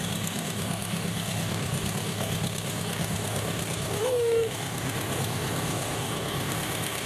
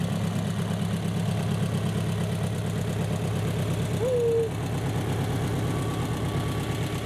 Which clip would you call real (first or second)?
second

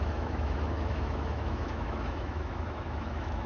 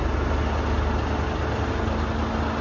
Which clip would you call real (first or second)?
second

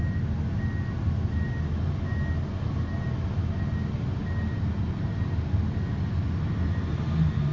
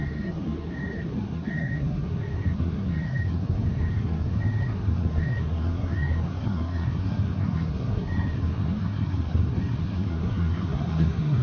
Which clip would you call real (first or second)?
first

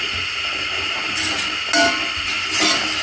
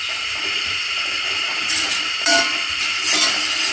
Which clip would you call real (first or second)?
first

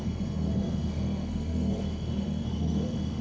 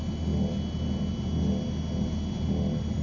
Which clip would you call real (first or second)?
second